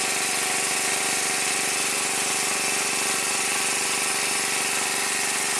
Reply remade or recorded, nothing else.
recorded